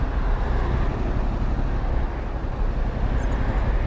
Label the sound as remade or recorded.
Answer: recorded